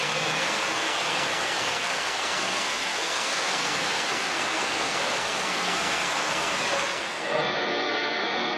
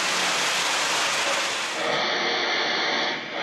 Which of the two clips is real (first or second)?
second